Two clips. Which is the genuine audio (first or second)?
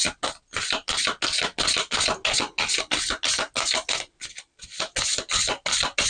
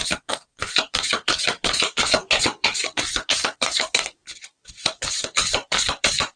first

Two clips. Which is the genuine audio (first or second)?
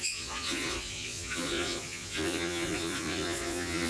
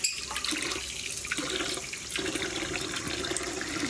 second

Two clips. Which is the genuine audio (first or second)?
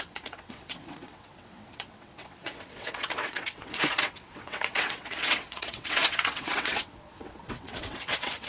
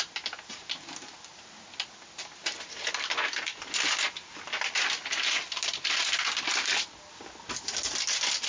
second